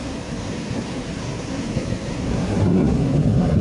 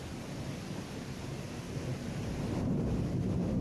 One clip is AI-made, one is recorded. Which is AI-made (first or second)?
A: first